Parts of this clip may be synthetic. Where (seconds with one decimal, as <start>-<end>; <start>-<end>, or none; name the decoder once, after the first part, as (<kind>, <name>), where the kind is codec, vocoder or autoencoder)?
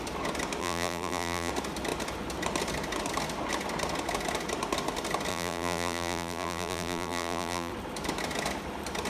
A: 0.6-1.5 (vocoder, BigVGAN v2); 5.3-7.7